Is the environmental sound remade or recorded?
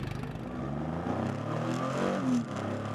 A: recorded